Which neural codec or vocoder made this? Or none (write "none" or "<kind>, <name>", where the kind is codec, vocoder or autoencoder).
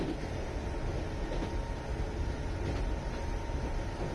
none